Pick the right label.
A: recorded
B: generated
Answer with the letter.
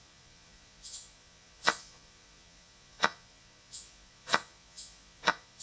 B